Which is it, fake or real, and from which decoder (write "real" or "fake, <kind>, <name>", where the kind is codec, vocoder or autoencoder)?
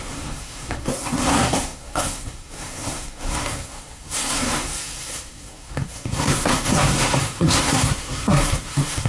fake, codec, SNAC